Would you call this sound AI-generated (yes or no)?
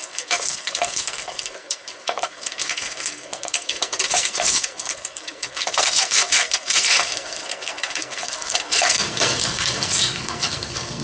yes